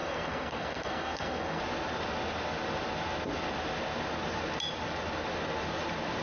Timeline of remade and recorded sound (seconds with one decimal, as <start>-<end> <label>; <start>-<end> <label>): 0.0-1.6 remade; 1.6-6.2 recorded